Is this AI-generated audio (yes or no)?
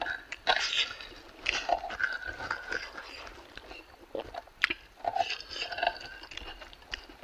no